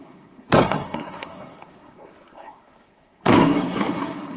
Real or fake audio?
fake